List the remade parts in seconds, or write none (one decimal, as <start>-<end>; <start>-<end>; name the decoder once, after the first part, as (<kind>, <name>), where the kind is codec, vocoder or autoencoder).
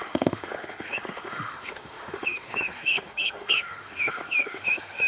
0.0-5.1 (autoencoder, DAC-VAE)